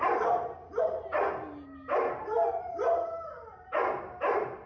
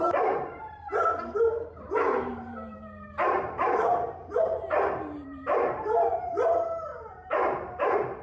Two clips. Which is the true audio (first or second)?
first